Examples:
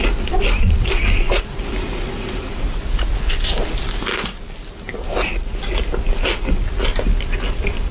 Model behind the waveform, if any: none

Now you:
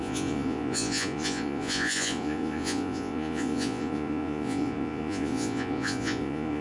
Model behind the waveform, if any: vocoder, Vocos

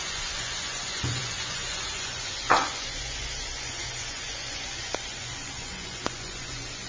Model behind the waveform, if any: vocoder, Vocos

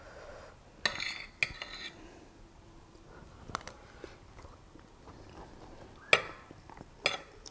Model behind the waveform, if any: none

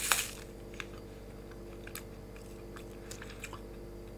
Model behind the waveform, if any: none